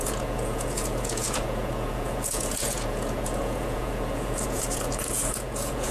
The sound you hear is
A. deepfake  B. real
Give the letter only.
A